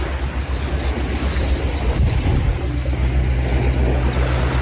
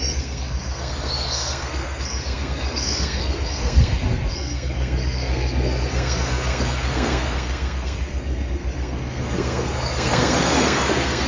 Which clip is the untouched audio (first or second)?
first